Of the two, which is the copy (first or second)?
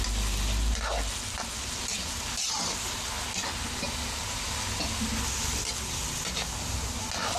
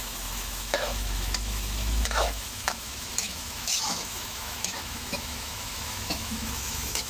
second